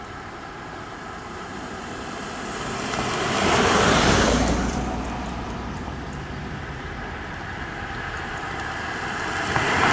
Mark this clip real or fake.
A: fake